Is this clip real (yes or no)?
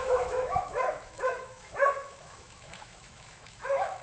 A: no